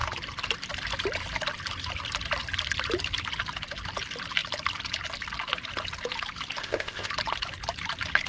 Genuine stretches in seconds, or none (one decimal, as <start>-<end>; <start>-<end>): 0.0-6.6; 7.1-8.3